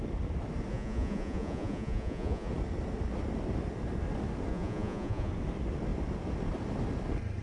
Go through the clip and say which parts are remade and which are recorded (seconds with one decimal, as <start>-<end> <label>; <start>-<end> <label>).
0.0-0.7 recorded; 0.7-2.5 remade; 2.5-4.5 recorded; 4.5-5.3 remade; 5.3-7.4 recorded